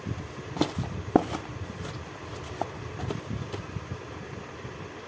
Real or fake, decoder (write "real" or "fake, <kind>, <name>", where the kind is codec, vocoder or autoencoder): real